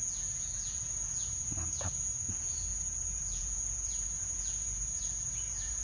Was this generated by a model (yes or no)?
yes